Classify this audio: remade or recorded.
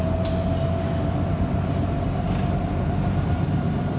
recorded